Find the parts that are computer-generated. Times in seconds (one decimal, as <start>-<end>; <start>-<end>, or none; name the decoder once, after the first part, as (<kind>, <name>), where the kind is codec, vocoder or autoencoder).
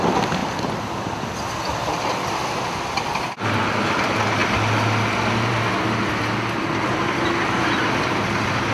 0.4-1.4 (vocoder, BigVGAN v2); 7.8-8.7